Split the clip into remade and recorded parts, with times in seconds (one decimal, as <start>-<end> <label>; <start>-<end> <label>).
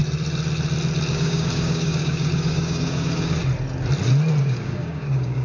0.0-1.1 recorded; 1.1-3.4 remade; 3.4-4.4 recorded; 4.4-5.4 remade